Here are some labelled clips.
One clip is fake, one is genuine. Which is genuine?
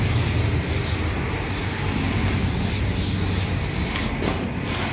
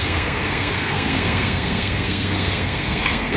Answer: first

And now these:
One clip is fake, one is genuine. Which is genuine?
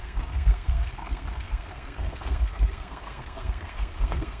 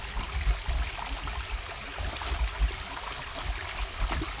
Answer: second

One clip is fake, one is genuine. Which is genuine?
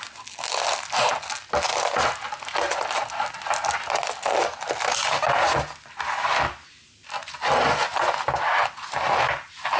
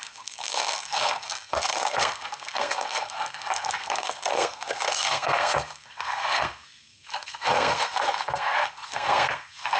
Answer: first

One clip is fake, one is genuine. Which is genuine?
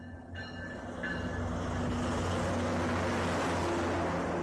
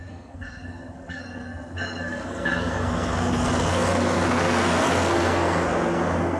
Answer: first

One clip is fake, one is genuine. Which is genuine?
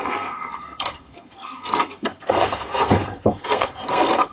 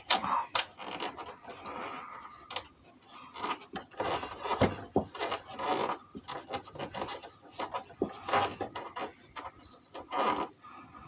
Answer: second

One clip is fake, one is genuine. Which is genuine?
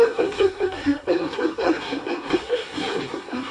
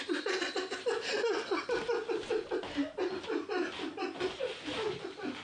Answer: second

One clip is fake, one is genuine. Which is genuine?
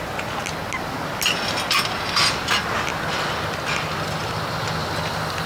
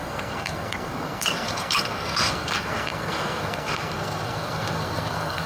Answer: first